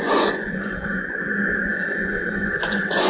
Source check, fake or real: fake